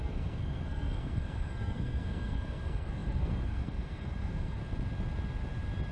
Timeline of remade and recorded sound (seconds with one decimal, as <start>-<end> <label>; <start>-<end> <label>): 0.0-4.6 remade; 4.6-5.9 recorded